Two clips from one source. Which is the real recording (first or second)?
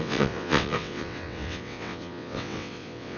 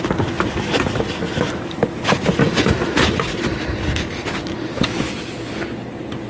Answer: second